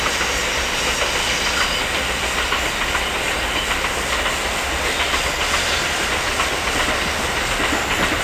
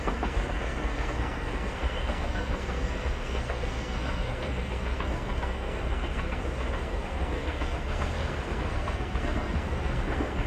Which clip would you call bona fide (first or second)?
first